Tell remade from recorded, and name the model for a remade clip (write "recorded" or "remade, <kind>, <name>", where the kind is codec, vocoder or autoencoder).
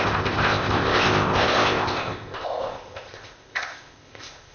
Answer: remade, codec, ZipCodec